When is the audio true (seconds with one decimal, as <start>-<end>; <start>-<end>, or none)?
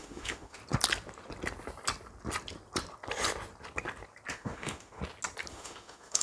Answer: 0.6-4.3; 5.0-5.5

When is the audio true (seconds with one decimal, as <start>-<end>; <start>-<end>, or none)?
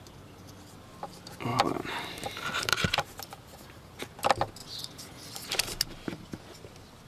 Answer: 0.0-1.5; 4.0-7.1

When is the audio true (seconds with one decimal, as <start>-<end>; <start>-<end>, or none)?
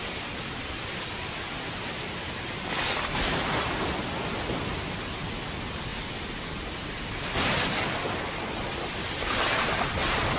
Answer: 0.0-10.4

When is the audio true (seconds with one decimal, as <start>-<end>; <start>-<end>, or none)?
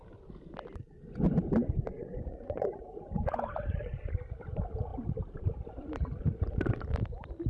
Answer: 0.0-1.9; 3.1-7.5